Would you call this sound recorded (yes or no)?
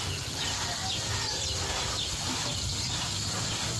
yes